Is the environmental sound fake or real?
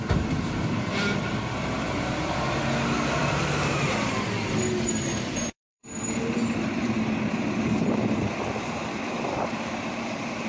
fake